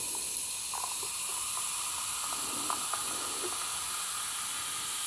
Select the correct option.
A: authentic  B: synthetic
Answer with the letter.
A